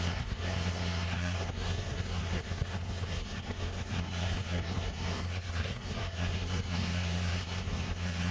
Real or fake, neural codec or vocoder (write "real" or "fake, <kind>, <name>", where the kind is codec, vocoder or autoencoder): fake, codec, SNAC